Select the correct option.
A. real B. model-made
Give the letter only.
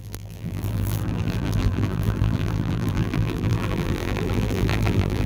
B